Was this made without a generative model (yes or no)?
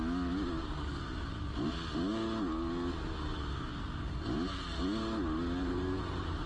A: yes